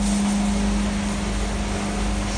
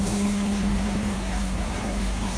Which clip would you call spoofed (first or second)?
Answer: second